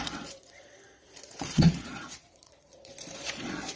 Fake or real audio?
fake